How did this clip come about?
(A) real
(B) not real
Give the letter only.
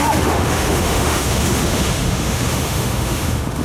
B